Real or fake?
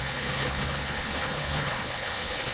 fake